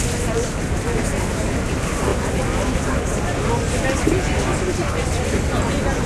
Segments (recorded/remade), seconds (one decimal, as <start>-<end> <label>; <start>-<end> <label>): 0.0-6.1 recorded